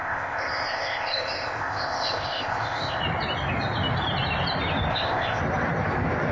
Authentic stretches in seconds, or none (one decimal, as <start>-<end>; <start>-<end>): 3.0-4.9; 5.4-6.3